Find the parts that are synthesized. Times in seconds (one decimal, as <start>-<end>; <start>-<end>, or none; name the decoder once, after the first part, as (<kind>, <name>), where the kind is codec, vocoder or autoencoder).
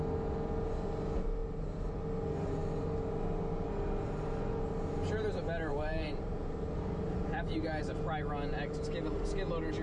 1.4-2.0 (vocoder, BigVGAN v2); 5.7-7.8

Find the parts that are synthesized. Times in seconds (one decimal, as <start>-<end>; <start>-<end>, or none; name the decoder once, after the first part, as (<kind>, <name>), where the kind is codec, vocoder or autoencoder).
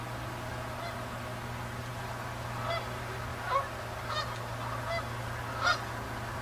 none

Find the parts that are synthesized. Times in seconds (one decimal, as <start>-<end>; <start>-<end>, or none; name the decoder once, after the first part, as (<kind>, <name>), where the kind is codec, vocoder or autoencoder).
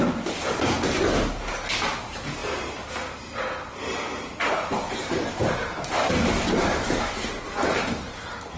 none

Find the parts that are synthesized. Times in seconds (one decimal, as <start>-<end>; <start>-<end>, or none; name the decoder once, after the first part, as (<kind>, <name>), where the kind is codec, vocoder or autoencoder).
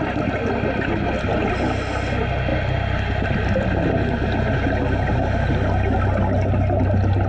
none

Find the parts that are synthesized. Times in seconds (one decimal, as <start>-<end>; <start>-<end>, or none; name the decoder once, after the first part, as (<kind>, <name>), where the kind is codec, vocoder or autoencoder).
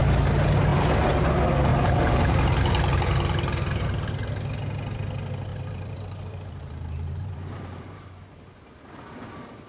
0.7-1.2 (vocoder, BigVGAN v2); 1.7-4.1; 5.5-8.4